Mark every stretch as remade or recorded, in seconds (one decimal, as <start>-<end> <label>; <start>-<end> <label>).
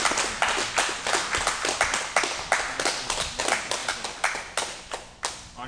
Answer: 0.0-5.7 recorded